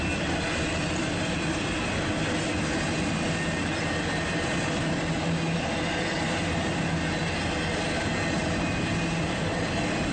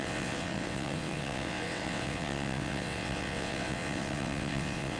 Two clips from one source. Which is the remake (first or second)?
second